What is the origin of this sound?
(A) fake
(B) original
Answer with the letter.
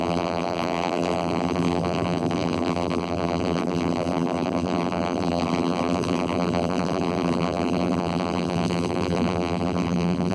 A